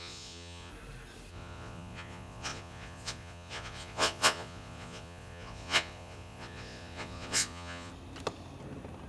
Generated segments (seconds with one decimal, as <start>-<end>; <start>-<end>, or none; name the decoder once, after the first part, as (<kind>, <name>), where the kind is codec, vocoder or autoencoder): 0.0-0.7 (vocoder, Vocos); 1.3-7.9